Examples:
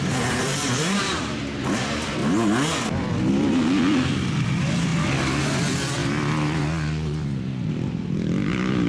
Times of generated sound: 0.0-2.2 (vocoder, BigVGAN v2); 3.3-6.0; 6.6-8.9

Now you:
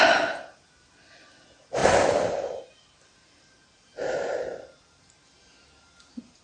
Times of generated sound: 1.8-3.4 (vocoder, BigVGAN v2)

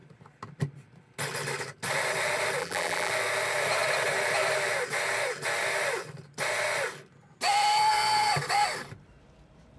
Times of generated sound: 2.6-3.1 (vocoder, BigVGAN v2)

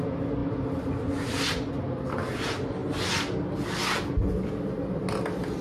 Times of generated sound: none

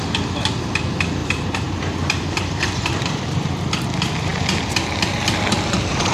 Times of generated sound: 1.2-3.2 (vocoder, BigVGAN v2)